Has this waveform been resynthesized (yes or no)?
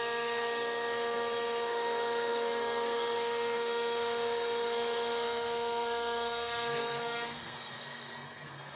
yes